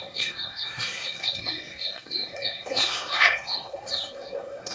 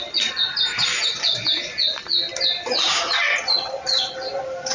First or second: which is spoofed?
first